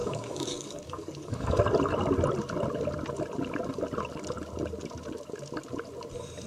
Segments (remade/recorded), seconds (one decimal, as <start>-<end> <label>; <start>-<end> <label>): 0.0-1.6 remade; 1.6-6.5 recorded